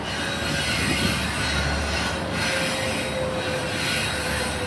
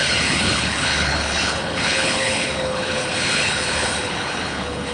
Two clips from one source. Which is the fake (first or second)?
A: second